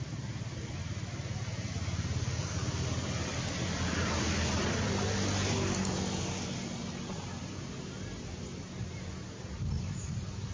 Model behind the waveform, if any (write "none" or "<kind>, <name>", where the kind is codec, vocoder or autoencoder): none